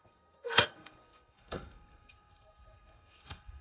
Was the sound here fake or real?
fake